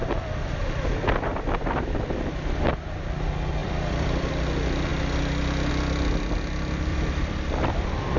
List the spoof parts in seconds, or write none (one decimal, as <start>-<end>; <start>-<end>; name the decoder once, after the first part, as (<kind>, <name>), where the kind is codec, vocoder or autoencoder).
1.3-2.7 (vocoder, BigVGAN v2); 3.6-4.3; 6.9-8.2